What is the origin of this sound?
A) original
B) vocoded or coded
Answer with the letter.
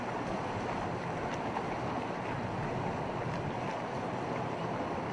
A